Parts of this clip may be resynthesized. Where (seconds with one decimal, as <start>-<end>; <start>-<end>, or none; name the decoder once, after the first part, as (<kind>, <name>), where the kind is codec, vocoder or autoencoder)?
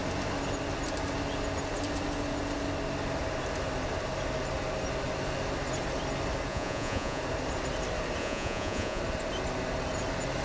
6.5-7.2 (vocoder, Vocos); 8.2-9.0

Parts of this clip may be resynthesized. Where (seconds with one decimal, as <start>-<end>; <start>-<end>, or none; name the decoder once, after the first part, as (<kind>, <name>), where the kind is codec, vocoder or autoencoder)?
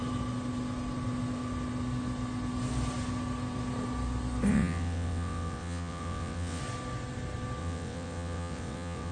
4.5-6.6 (vocoder, WaveNeXt); 7.6-9.1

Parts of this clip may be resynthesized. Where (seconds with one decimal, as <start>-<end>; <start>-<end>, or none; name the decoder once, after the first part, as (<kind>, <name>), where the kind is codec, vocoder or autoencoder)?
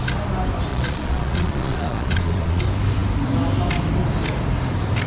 0.7-2.6 (vocoder, Vocos)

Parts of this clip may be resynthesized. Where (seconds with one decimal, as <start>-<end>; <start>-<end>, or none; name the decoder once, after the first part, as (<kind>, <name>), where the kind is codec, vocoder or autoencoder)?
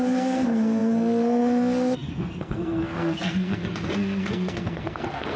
0.0-5.4 (codec, SNAC)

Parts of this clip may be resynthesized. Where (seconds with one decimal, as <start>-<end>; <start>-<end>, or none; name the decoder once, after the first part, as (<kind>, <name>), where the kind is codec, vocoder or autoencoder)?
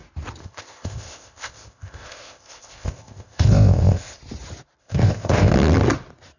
0.4-4.2 (codec, ZipCodec); 4.8-5.5